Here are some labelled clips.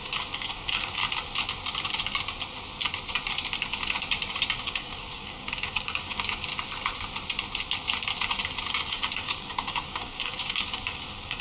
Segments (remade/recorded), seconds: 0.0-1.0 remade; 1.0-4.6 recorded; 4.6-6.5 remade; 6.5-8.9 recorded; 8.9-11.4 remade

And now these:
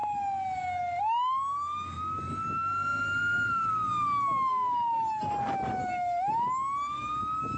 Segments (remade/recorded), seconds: 0.0-2.9 recorded; 2.9-3.7 remade; 3.7-7.6 recorded